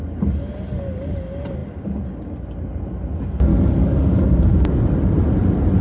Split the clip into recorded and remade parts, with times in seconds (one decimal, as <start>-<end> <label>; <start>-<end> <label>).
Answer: 0.0-3.5 recorded; 3.5-4.3 remade; 4.3-5.8 recorded